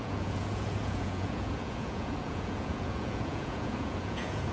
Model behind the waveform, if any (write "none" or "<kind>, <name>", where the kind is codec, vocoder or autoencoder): vocoder, Vocos